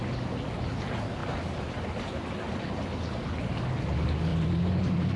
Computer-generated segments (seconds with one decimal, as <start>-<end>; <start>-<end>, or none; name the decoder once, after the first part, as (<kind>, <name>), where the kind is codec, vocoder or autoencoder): 1.2-2.2 (vocoder, BigVGAN v2); 4.3-5.2